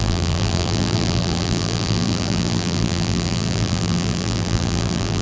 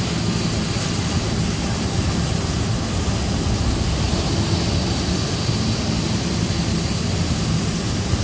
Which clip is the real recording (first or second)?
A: second